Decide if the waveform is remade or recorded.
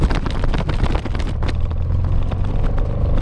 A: recorded